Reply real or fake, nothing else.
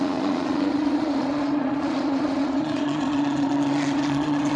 fake